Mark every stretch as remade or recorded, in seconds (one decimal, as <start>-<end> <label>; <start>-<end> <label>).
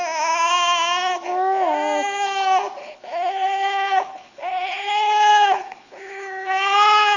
0.0-2.8 recorded; 2.8-7.2 remade